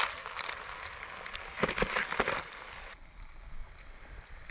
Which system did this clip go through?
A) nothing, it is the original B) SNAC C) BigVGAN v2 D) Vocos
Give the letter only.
A